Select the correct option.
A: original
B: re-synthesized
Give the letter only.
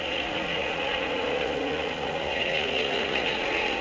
B